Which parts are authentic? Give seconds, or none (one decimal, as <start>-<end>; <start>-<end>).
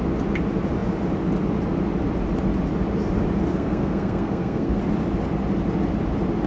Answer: 0.0-3.5; 4.8-6.5